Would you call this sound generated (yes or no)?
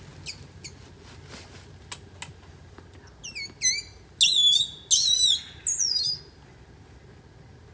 no